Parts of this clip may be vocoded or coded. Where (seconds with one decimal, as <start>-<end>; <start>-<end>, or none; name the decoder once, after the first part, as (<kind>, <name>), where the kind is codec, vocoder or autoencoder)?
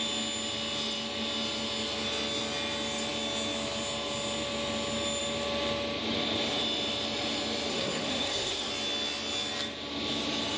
7.7-8.7 (codec, SNAC)